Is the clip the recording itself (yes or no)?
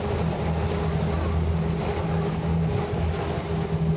yes